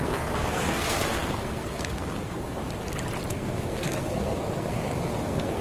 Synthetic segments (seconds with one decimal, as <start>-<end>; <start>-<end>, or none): 0.0-2.6; 3.3-5.6